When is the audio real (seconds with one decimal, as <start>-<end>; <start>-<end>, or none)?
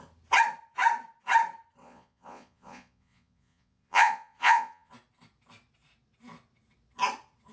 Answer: 0.0-1.8; 4.9-7.5